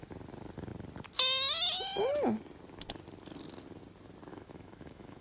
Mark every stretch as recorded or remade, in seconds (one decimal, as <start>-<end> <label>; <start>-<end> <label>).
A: 0.0-4.3 recorded; 4.3-5.2 remade